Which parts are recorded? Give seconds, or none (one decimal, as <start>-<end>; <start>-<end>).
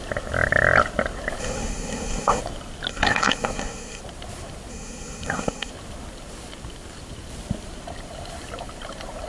0.0-1.4; 2.4-2.9; 4.0-4.7; 5.7-9.3